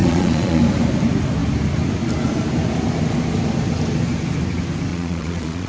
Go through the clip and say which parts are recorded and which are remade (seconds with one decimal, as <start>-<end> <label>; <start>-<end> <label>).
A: 0.0-0.6 remade; 0.6-4.9 recorded; 4.9-5.7 remade